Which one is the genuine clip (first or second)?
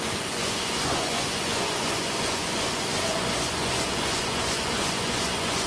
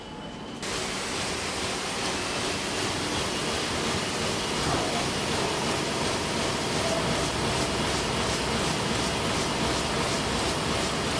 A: second